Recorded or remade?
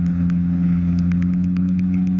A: remade